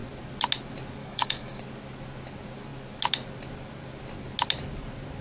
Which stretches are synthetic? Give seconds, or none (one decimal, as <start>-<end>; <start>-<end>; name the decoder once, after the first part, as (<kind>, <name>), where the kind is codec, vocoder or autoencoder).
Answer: 1.0-1.6 (autoencoder, DAC-VAE)